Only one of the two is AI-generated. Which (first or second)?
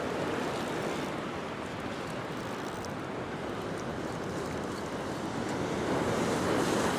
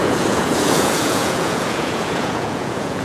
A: second